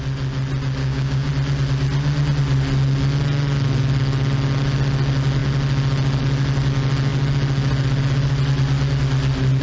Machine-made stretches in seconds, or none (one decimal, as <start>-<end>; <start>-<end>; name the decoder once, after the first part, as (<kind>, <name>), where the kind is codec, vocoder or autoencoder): 0.8-1.3 (codec, DAC)